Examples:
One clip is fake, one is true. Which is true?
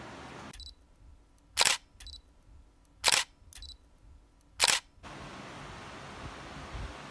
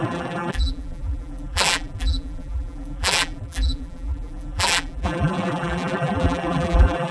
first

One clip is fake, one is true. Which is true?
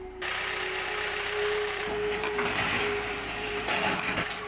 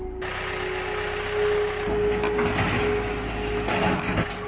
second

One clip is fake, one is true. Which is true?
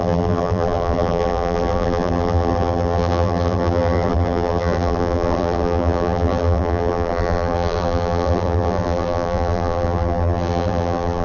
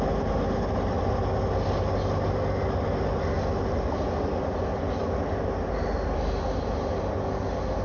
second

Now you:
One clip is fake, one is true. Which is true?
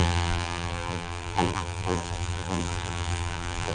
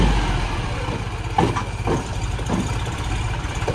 second